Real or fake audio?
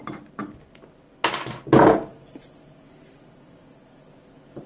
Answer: real